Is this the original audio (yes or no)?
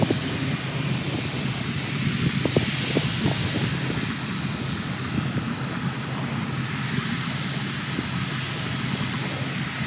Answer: yes